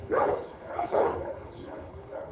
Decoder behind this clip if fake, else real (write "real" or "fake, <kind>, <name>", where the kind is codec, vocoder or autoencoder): fake, codec, HILCodec